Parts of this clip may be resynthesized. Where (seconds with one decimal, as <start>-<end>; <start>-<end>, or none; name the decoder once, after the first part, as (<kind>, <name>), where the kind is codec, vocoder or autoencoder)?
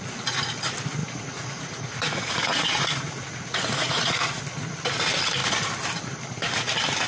1.0-4.4 (vocoder, Vocos)